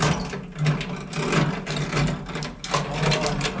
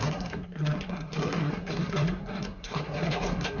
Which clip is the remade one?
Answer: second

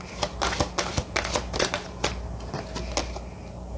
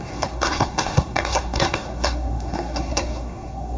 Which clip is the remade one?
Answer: second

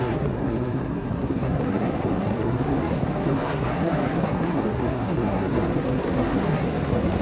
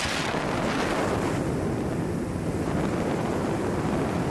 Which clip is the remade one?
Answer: first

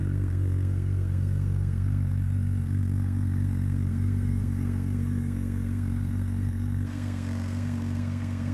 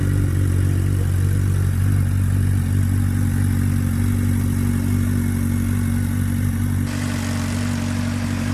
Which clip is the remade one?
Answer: first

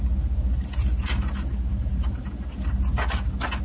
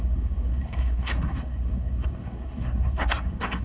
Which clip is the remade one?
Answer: second